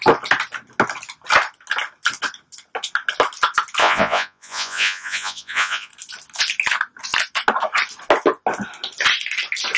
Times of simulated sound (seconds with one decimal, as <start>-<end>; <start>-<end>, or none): 3.8-5.9